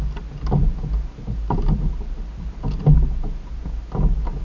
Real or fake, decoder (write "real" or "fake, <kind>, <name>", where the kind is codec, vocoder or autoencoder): real